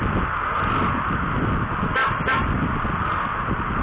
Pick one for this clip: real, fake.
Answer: real